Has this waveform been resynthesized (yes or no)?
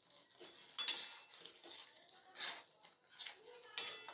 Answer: no